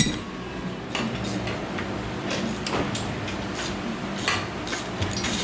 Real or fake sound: real